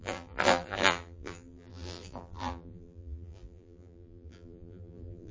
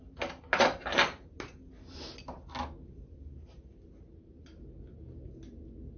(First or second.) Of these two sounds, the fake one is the first